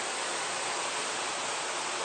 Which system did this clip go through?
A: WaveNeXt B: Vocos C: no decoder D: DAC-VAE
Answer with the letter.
C